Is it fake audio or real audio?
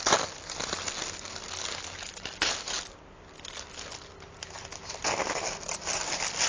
real